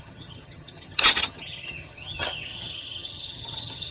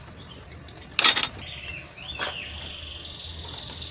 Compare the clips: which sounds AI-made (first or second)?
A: first